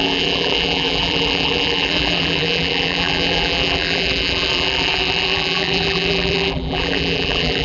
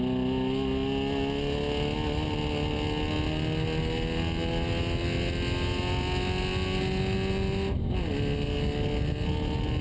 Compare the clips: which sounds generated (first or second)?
first